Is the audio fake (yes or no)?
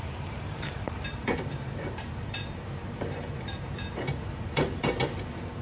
yes